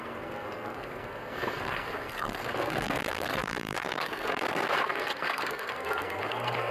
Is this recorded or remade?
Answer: remade